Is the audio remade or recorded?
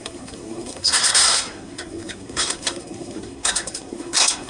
remade